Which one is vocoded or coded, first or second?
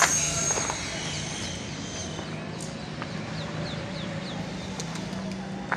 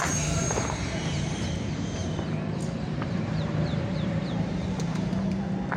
second